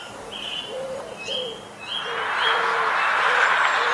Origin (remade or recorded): recorded